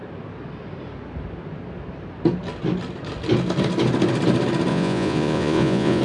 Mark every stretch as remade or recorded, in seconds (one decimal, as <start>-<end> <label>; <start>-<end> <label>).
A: 0.0-4.7 recorded; 4.7-6.0 remade